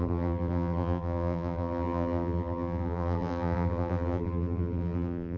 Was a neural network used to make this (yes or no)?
yes